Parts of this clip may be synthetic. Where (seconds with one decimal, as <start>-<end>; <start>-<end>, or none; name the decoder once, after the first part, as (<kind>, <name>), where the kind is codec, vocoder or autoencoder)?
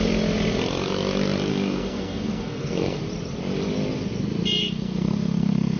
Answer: 1.5-3.0 (codec, SNAC); 4.6-5.8